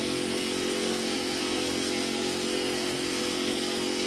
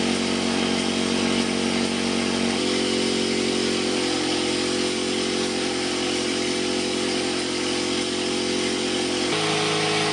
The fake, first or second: first